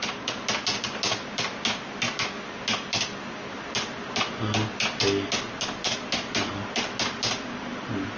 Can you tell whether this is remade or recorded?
recorded